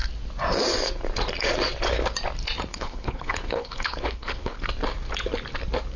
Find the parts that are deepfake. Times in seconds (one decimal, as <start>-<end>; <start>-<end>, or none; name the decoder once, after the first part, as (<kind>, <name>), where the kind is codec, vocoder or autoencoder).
2.7-4.6 (codec, HILCodec)